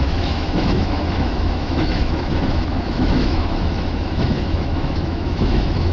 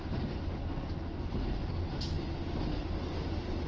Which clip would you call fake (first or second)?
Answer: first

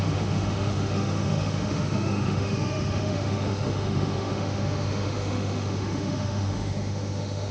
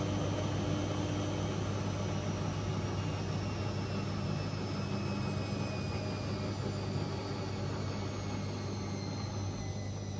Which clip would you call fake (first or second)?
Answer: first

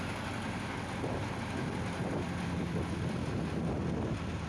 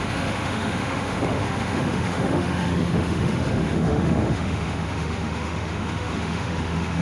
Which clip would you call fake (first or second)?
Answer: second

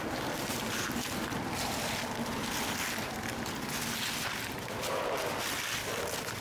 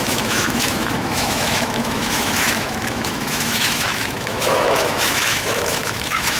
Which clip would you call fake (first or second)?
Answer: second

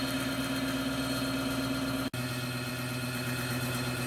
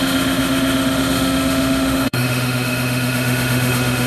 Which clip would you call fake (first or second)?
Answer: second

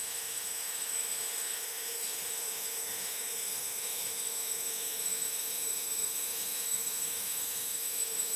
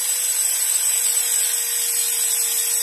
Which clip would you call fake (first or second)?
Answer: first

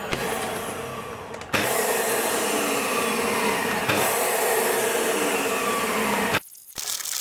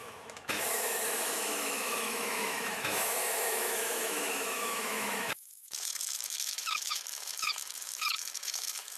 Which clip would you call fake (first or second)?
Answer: second